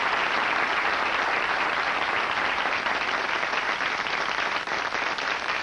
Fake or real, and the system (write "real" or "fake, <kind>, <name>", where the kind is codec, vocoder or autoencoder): fake, vocoder, BigVGAN v2